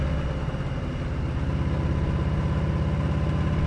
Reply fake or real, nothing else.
real